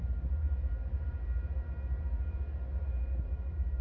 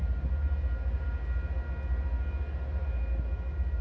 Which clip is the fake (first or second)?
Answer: first